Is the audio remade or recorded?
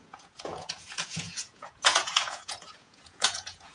remade